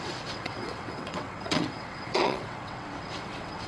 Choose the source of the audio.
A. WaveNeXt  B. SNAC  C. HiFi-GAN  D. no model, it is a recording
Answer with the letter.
A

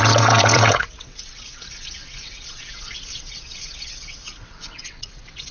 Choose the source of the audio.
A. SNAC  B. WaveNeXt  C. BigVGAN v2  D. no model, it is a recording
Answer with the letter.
B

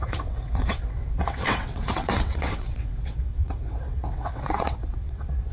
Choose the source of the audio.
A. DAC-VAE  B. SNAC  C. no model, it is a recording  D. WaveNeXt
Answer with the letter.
D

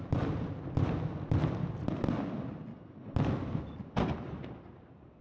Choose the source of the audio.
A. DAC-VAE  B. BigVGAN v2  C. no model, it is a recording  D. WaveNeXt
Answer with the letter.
C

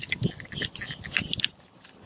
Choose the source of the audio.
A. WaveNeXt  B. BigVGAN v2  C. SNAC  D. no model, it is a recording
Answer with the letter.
D